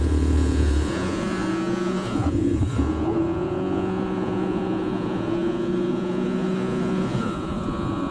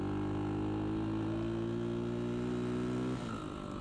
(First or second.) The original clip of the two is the second